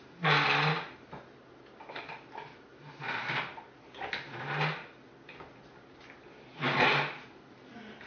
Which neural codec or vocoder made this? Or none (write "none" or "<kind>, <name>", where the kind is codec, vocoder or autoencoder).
none